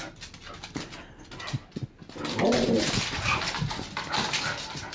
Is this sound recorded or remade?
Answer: recorded